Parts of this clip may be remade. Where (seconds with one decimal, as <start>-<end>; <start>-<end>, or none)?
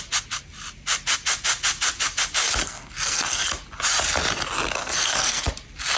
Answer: 2.6-3.5; 4.8-5.5